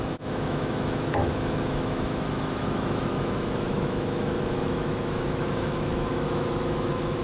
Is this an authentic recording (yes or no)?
no